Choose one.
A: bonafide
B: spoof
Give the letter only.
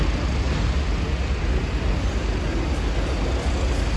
A